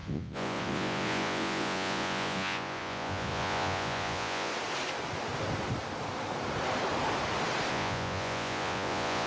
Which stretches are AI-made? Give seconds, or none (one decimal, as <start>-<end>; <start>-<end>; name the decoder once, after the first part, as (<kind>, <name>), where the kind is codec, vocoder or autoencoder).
0.0-4.5 (vocoder, Vocos); 7.7-9.3